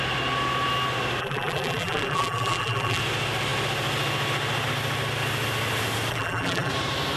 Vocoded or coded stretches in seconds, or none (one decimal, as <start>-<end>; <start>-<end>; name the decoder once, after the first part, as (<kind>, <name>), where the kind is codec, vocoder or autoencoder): 1.2-3.0 (vocoder, BigVGAN v2); 6.1-6.7